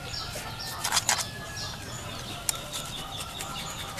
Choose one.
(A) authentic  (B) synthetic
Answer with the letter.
A